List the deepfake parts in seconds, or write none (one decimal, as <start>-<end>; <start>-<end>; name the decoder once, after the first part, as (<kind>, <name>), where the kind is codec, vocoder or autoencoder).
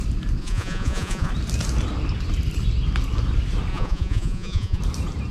0.4-1.3 (vocoder, Vocos); 3.7-4.8